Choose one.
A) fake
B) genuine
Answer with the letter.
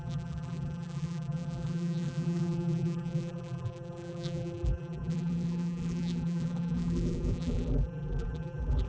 A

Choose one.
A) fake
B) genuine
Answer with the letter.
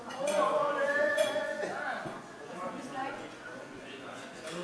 A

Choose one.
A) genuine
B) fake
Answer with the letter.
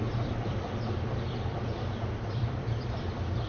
B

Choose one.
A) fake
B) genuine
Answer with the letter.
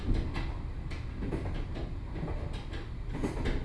B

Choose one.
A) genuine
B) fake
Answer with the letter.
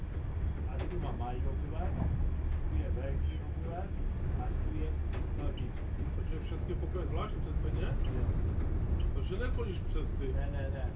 A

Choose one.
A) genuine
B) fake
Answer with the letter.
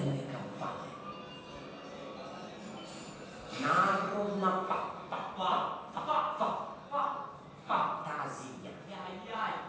A